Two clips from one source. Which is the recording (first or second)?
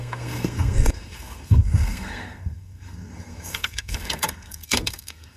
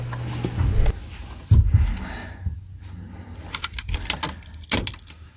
second